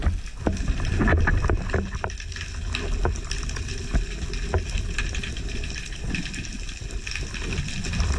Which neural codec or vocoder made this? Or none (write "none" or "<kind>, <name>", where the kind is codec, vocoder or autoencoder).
none